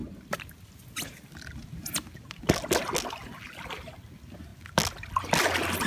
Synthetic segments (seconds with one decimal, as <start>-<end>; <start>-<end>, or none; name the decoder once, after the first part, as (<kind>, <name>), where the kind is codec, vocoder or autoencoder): 0.0-0.6 (vocoder, BigVGAN v2)

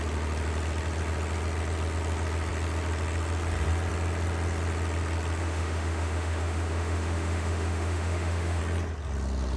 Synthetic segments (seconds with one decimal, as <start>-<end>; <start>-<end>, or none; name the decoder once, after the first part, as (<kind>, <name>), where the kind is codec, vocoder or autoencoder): 5.4-8.6 (autoencoder, DAC-VAE)

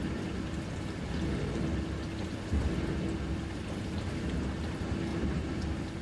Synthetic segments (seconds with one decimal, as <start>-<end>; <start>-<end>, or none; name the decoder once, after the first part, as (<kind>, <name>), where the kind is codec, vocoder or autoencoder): 5.1-6.0 (vocoder, BigVGAN v2)

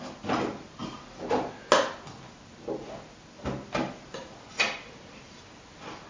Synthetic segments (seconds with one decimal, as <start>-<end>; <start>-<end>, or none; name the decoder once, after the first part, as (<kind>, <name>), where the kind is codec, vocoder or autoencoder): none

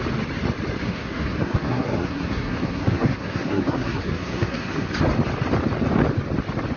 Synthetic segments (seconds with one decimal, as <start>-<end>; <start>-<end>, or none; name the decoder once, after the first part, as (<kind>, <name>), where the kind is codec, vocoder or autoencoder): 0.8-4.9 (codec, SNAC)

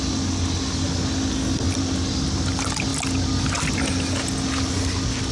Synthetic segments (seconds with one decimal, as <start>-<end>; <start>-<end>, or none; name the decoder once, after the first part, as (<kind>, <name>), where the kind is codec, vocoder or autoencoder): none

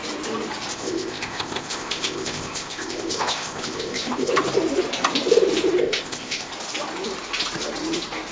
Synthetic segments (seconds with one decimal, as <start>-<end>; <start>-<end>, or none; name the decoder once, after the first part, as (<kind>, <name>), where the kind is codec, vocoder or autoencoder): 0.7-4.3 (codec, ZipCodec); 5.8-6.5